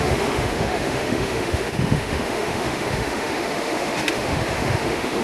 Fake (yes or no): yes